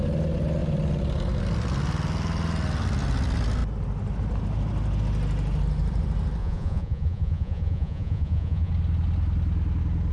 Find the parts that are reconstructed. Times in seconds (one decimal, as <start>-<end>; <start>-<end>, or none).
6.4-8.7